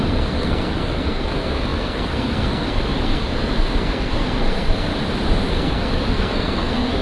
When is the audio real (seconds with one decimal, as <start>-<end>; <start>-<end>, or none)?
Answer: 4.9-5.5